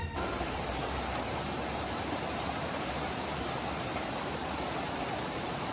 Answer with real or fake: fake